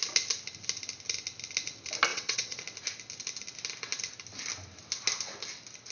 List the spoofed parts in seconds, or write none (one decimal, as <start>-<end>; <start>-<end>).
2.1-2.6